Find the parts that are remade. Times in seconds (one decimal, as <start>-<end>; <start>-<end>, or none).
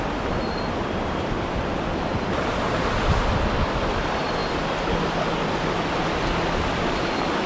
0.0-4.4